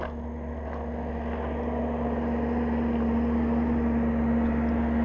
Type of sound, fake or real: real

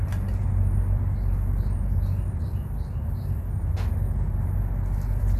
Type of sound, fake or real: real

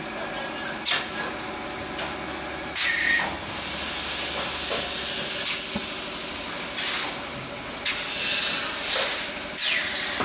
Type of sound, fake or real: real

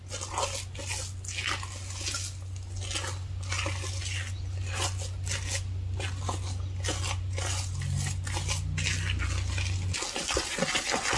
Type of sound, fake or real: real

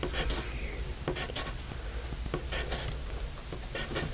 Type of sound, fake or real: real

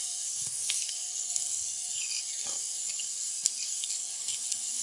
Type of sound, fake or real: fake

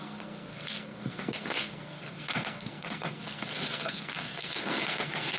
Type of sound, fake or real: fake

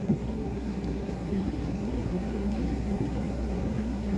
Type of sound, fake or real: fake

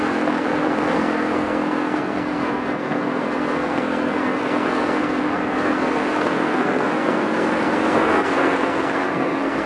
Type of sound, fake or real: fake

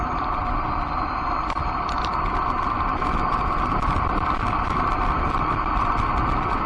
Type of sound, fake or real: real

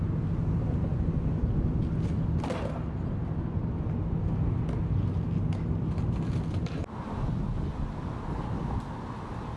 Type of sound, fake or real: real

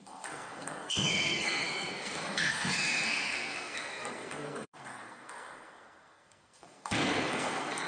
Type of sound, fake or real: fake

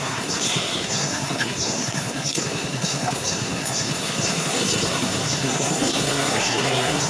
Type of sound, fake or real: fake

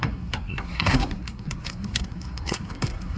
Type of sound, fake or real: fake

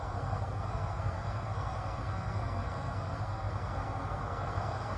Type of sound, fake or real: fake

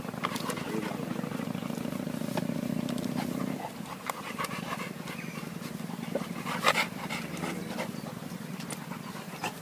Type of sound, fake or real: real